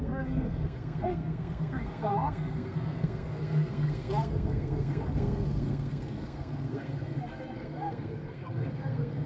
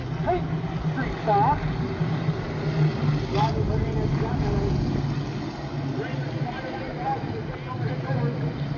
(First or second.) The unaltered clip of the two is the second